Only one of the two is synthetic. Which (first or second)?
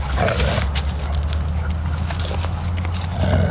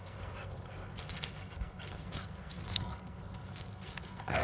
second